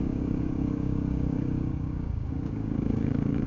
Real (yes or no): no